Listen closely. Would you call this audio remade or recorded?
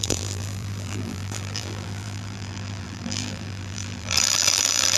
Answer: remade